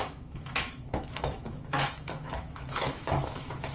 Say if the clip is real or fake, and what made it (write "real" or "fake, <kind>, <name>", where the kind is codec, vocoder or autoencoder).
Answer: fake, autoencoder, DAC-VAE